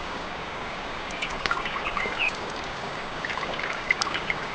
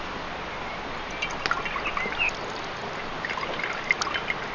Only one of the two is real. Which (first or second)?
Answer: second